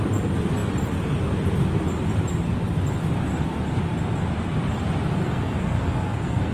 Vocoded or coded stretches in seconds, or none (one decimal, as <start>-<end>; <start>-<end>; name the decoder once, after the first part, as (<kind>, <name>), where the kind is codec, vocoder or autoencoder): 5.2-6.5 (codec, SNAC)